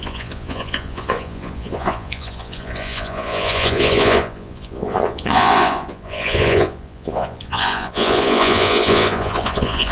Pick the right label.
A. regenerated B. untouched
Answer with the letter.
A